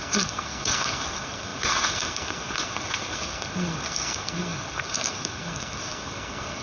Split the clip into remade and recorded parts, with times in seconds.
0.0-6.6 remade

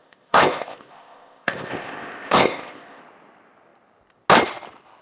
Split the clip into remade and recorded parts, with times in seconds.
0.0-3.0 remade; 3.0-5.0 recorded

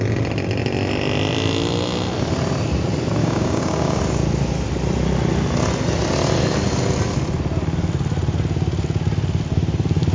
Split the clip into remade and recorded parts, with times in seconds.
0.0-3.2 recorded; 3.2-4.0 remade; 4.0-10.1 recorded

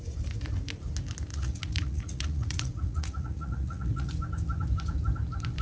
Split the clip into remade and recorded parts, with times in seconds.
0.0-1.3 recorded; 1.3-4.1 remade; 4.1-5.6 recorded

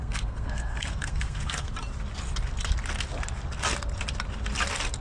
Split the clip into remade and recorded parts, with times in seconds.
0.0-1.7 remade; 1.7-5.0 recorded